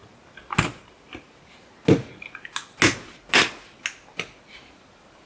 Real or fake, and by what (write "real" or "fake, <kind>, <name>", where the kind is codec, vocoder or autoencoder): real